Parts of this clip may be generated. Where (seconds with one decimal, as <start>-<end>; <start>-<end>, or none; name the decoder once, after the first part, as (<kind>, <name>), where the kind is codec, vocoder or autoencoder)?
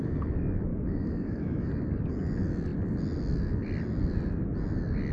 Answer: 0.7-1.7 (autoencoder, DAC-VAE)